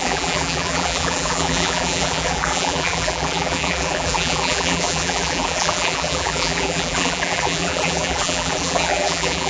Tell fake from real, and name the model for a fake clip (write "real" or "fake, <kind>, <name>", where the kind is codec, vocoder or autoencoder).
fake, vocoder, BigVGAN v2